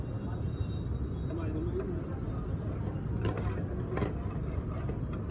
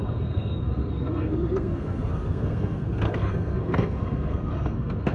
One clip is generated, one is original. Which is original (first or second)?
first